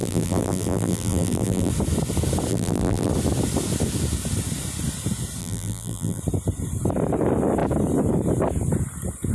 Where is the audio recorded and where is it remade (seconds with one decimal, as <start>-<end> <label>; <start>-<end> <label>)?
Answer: 0.0-1.7 remade; 1.7-2.5 recorded; 2.5-3.1 remade; 3.1-5.4 recorded; 5.4-6.2 remade; 6.2-9.3 recorded